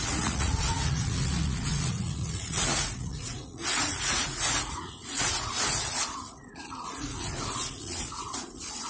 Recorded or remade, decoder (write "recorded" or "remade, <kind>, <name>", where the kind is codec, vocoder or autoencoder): remade, vocoder, Vocos